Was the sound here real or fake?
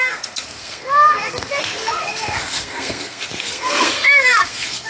fake